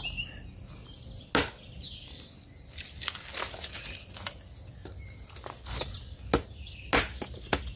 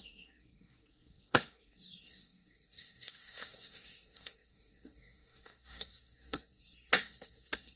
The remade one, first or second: second